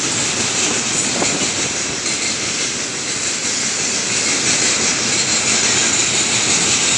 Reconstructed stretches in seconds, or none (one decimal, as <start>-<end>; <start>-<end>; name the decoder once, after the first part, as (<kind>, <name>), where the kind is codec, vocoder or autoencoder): none

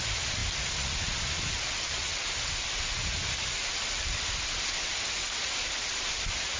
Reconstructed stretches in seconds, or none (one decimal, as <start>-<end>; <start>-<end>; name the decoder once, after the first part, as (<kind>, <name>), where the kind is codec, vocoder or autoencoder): none

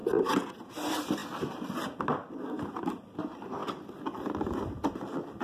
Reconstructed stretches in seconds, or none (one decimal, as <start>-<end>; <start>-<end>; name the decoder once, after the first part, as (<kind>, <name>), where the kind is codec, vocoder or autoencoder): none

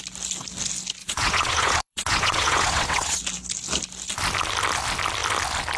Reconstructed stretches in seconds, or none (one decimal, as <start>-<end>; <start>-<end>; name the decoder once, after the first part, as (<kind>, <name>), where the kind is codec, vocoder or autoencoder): 1.0-3.2 (vocoder, WaveNeXt)